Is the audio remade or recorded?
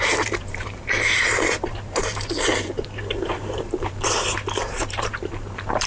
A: remade